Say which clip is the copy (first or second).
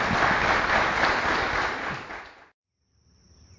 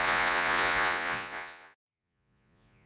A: second